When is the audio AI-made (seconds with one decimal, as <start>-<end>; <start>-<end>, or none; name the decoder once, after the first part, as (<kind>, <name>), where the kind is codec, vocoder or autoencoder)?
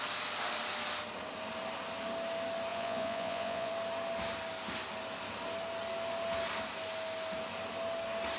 2.7-3.7 (vocoder, Vocos)